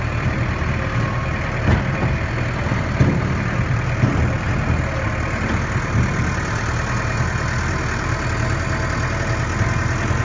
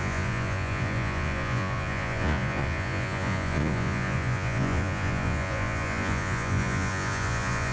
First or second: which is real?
first